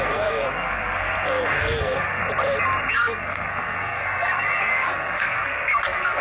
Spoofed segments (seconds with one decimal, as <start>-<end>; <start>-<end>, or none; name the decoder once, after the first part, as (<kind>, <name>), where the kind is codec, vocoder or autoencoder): 0.0-2.2 (codec, SNAC); 2.9-6.2

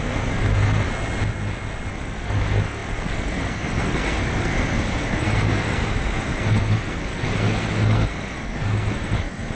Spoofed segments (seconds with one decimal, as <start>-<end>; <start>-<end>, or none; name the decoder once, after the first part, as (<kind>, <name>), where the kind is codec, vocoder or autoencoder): 0.0-0.9 (codec, SNAC); 1.9-9.6

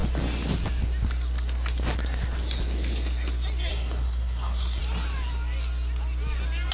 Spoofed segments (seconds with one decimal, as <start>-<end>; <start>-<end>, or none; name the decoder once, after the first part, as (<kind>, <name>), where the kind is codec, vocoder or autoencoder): 3.7-4.8 (codec, SNAC)

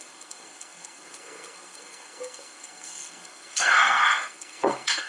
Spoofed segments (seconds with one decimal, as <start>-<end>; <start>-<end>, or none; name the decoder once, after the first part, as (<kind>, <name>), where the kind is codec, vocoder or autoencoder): 0.0-5.1 (codec, SNAC)